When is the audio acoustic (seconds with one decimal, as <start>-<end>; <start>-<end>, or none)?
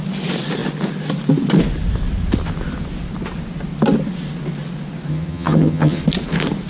0.0-5.1; 6.0-6.7